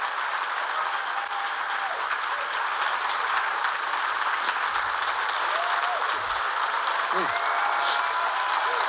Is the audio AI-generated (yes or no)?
no